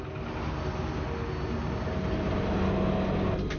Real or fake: real